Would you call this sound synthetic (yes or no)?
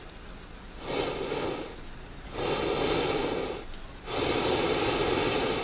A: no